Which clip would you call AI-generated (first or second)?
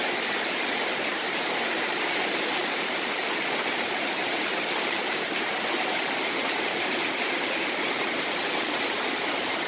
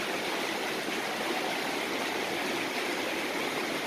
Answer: first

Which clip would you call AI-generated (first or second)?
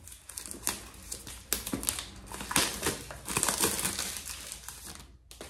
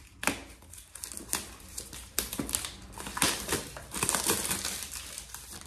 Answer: second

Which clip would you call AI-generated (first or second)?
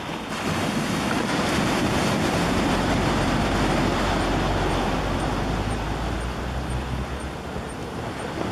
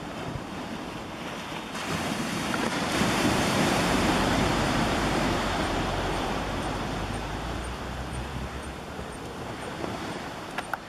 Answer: second